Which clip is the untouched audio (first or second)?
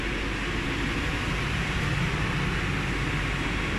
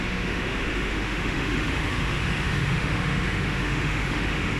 first